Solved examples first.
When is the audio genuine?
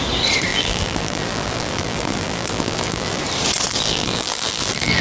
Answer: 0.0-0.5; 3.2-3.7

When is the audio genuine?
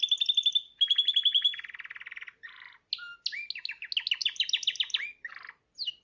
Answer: 0.0-1.3; 2.5-4.2; 5.0-6.0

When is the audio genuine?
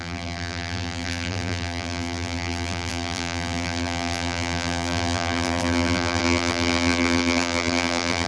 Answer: none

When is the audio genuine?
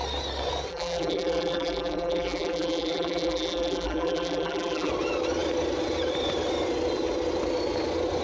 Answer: 0.0-0.7; 4.9-8.2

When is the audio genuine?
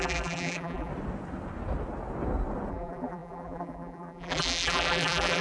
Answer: 0.9-2.7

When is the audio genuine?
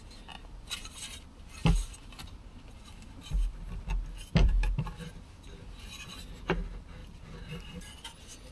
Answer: 0.0-0.8; 4.8-7.0; 7.8-8.5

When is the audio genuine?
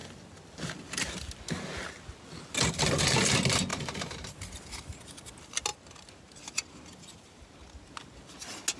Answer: 0.0-3.7; 4.4-8.8